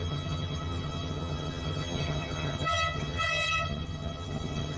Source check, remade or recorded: remade